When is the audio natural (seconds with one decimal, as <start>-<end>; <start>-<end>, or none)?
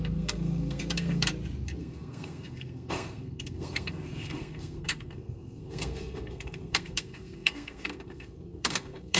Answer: 1.3-1.8